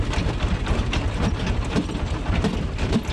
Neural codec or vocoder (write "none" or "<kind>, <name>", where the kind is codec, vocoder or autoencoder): none